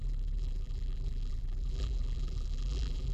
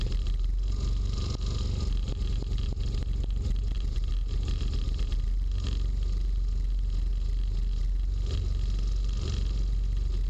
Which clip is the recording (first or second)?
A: second